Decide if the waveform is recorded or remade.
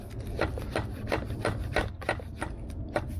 recorded